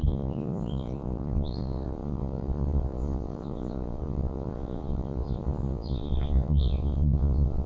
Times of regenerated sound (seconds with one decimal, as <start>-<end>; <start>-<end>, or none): 0.0-7.7